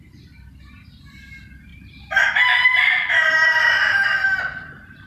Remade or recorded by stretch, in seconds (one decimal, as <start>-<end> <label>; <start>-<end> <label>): 0.0-1.7 recorded; 1.7-5.1 remade